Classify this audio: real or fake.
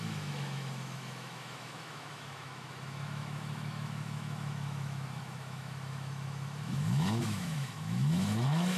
fake